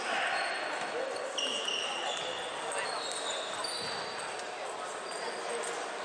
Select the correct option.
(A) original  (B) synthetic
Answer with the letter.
A